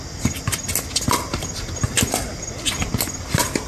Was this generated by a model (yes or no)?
no